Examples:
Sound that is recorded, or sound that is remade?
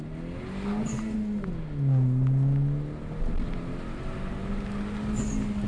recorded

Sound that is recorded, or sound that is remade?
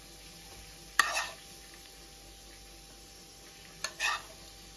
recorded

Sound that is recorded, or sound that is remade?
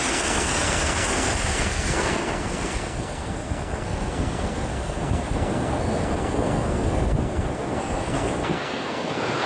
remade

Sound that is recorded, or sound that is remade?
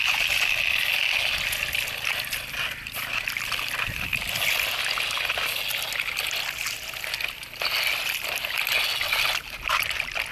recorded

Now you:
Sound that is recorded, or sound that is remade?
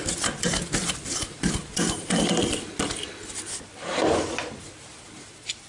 recorded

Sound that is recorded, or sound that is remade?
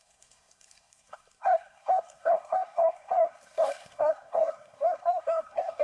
remade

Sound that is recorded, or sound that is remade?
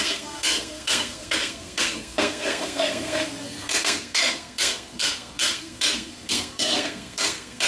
remade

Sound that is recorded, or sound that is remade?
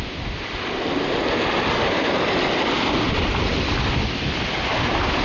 recorded